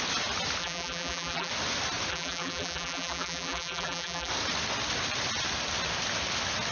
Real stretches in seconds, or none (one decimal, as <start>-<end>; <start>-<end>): 0.0-0.6; 1.5-2.1; 4.3-6.7